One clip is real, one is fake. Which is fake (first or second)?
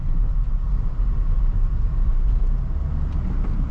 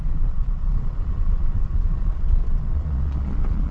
second